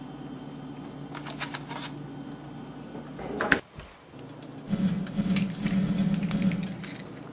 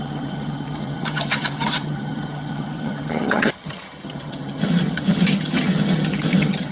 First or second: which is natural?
first